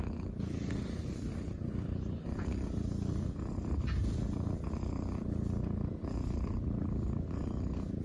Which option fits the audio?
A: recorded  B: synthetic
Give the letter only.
A